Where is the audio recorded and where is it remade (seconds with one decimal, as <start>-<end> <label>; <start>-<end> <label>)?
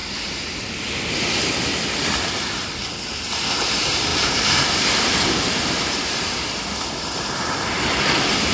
0.0-0.6 remade; 0.6-4.1 recorded; 4.1-6.4 remade; 6.4-8.5 recorded